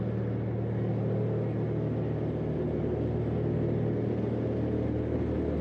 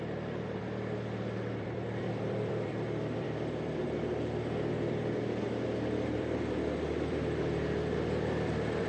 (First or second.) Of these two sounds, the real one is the first